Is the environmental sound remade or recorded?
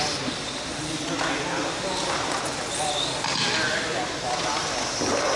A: recorded